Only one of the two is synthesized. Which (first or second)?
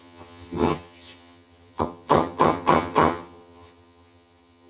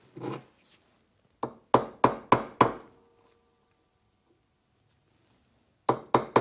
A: first